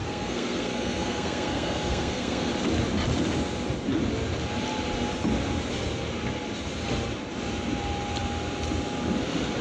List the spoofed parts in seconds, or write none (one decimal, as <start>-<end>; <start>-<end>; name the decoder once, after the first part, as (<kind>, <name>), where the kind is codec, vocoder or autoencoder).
0.0-2.5 (codec, SNAC)